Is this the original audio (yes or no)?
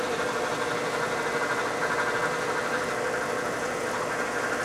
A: yes